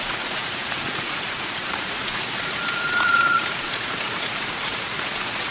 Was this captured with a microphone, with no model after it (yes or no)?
no